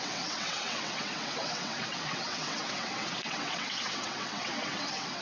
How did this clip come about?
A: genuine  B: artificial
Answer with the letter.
B